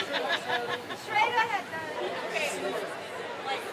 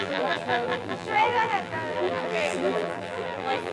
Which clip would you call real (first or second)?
first